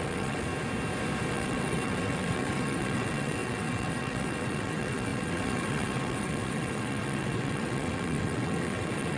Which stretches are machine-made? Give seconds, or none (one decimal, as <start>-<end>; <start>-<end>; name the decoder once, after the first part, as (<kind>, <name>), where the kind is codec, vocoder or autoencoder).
0.0-0.5 (vocoder, WaveNeXt); 1.3-9.2

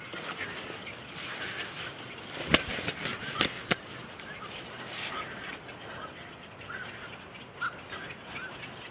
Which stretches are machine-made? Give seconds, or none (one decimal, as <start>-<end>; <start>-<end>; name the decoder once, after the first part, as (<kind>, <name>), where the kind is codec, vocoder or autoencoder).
3.1-4.7 (vocoder, BigVGAN v2)

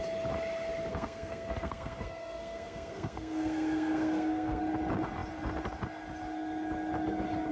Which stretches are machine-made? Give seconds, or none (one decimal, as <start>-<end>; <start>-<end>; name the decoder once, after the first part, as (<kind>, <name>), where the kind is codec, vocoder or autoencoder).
0.9-4.6 (codec, SNAC)

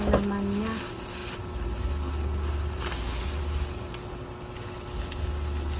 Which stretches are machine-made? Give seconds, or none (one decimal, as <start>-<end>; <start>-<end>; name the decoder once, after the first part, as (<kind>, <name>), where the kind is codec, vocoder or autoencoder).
none

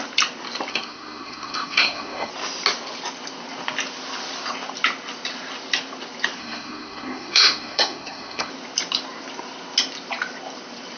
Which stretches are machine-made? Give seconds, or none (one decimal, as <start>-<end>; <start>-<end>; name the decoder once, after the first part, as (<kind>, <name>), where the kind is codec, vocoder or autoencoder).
0.7-2.3 (codec, SNAC); 6.4-8.5

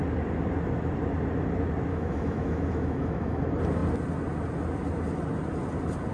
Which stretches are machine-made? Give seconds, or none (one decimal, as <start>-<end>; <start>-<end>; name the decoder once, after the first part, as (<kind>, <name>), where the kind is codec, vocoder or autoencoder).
1.9-3.4 (autoencoder, DAC-VAE)

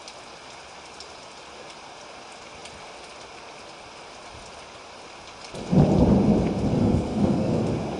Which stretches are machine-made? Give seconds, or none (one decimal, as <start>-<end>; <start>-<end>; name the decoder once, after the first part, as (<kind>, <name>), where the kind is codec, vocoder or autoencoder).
6.8-7.6 (codec, SNAC)